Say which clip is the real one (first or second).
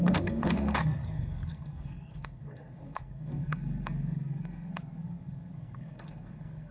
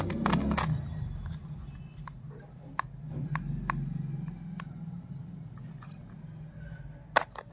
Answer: second